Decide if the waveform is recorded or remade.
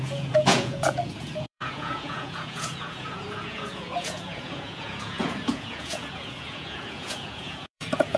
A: remade